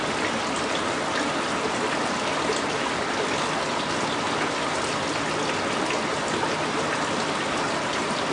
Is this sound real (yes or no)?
yes